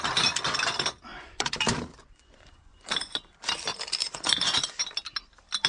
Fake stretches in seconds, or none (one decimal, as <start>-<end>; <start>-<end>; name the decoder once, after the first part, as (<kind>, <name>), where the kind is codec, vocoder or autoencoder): 1.1-1.6 (vocoder, Vocos); 2.0-3.3; 4.0-4.8